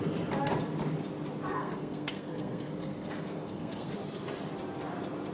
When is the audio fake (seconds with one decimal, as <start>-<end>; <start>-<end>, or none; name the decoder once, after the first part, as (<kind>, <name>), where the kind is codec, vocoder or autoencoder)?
1.6-3.9 (codec, SNAC)